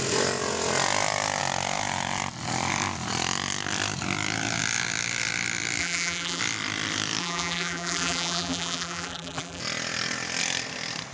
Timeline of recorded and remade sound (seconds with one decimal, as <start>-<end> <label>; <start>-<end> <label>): 0.0-5.8 recorded; 5.8-6.4 remade; 6.4-7.2 recorded; 7.2-9.6 remade; 9.6-11.1 recorded